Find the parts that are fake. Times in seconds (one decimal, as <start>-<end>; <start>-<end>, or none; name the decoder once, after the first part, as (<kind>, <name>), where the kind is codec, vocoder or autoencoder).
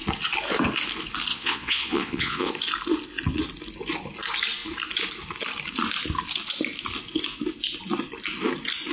1.3-2.5 (vocoder, Vocos)